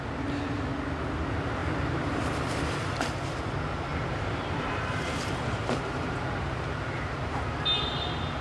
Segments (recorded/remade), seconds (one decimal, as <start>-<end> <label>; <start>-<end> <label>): 0.0-3.9 recorded; 3.9-7.1 remade; 7.1-8.4 recorded